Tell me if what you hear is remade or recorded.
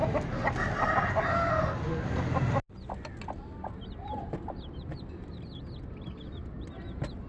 recorded